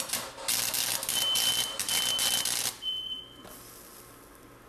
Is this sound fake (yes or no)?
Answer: no